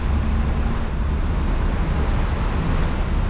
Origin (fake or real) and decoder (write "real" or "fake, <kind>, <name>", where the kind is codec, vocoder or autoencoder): real